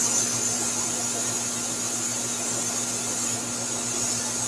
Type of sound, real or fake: real